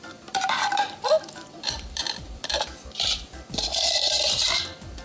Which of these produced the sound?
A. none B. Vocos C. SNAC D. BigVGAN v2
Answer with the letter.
D